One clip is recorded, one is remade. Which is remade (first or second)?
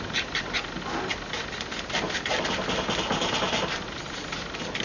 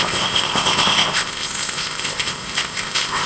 second